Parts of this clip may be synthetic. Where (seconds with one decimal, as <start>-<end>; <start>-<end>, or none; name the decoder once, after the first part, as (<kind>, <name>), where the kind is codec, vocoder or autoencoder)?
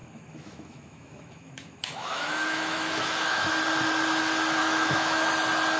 0.0-3.5 (autoencoder, DAC-VAE); 4.6-5.3